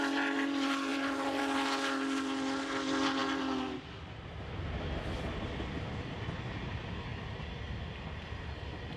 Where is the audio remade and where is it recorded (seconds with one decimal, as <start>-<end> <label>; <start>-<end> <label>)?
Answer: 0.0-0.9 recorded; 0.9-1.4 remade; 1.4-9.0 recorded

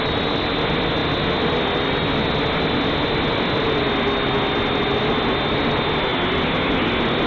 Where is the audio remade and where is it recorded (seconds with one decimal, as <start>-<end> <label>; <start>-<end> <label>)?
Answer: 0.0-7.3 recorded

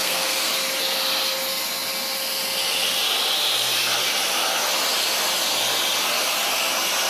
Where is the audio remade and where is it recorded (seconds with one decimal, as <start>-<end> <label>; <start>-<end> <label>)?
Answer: 0.0-0.5 remade; 0.5-7.1 recorded

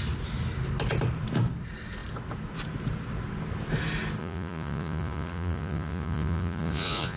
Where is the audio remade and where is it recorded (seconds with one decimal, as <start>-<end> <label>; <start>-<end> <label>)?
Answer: 0.0-4.2 recorded; 4.2-7.2 remade

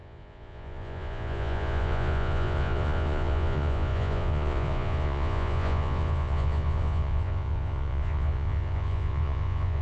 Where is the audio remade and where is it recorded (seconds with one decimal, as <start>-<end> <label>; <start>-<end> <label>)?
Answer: 0.0-9.8 remade